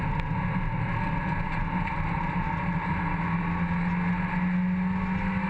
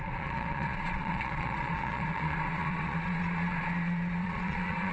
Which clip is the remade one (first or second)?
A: second